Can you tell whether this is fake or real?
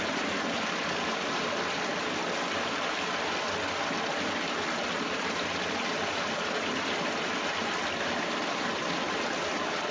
real